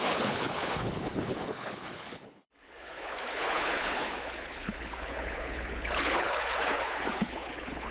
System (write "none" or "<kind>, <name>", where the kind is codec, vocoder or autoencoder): codec, HILCodec